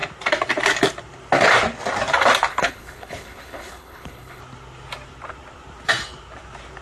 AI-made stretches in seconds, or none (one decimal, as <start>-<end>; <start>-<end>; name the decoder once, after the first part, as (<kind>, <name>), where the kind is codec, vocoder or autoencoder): 2.5-4.4 (codec, HILCodec)